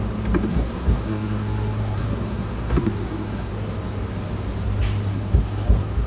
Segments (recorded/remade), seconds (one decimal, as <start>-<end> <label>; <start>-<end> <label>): 0.0-0.5 recorded; 0.5-3.5 remade; 3.5-5.1 recorded; 5.1-6.1 remade